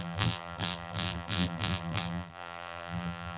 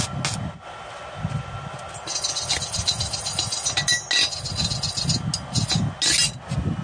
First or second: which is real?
second